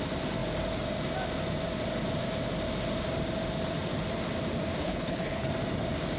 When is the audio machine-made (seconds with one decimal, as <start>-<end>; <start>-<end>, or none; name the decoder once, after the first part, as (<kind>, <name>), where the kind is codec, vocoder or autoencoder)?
4.8-5.5 (codec, HILCodec)